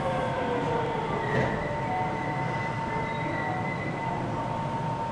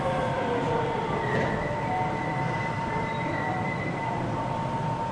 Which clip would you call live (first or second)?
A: first